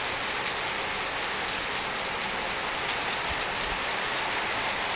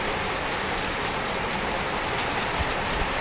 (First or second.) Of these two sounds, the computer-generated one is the second